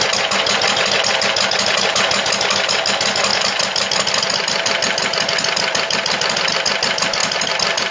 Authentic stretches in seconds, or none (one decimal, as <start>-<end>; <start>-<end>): 0.0-7.9